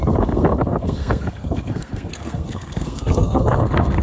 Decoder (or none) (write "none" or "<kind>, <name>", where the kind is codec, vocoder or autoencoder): codec, SNAC